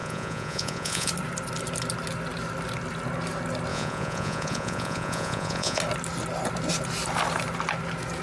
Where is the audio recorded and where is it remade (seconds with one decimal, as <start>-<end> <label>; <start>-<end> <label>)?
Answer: 0.0-1.1 remade; 1.1-3.7 recorded; 3.7-5.8 remade; 5.8-8.2 recorded